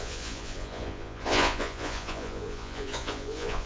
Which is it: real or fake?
fake